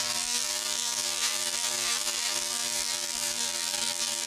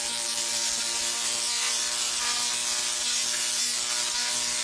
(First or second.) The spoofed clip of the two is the first